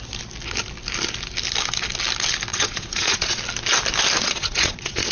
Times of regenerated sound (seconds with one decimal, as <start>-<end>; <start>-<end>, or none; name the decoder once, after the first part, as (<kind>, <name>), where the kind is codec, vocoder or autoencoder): 2.5-3.4 (vocoder, Vocos); 4.2-5.1